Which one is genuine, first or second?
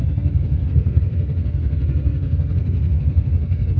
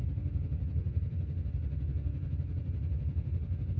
second